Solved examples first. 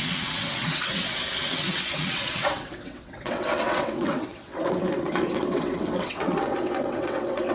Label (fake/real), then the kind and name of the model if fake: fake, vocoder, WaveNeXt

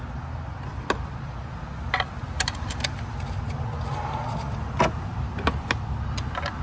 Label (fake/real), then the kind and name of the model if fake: real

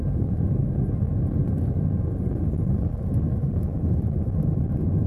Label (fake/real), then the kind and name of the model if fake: real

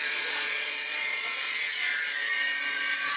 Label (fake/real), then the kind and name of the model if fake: fake, vocoder, Vocos